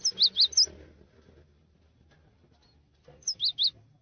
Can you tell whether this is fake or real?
real